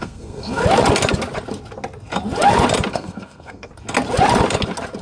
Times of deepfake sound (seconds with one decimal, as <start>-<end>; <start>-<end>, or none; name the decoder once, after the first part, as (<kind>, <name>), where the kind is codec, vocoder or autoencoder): 0.0-0.6 (codec, SNAC); 2.9-3.7